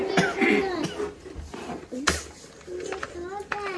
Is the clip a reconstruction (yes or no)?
no